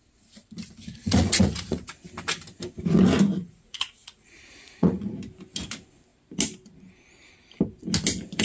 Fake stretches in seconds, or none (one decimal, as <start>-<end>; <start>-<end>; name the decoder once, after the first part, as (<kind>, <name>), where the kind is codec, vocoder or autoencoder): 1.0-1.8 (vocoder, Vocos); 3.4-5.1